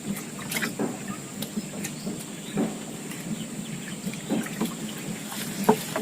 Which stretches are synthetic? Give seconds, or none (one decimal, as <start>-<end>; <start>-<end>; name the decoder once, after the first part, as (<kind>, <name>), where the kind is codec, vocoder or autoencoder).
none